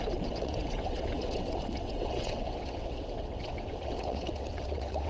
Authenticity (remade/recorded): remade